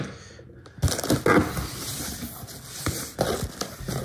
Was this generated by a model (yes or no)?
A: no